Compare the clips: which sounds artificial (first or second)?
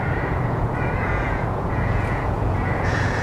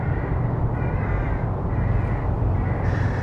first